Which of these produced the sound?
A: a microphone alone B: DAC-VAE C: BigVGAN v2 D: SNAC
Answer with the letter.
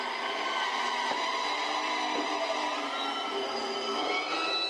A